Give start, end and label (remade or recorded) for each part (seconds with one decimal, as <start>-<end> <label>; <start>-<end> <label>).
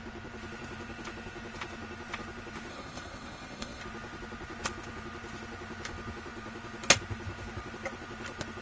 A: 0.0-2.7 recorded; 2.7-3.8 remade; 3.8-8.6 recorded